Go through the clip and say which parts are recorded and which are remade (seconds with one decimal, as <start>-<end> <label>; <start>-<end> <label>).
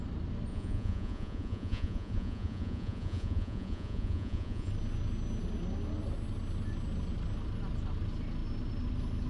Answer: 0.0-0.5 recorded; 0.5-4.7 remade; 4.7-9.3 recorded